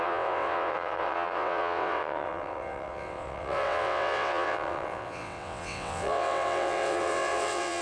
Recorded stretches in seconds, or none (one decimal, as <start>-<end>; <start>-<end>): none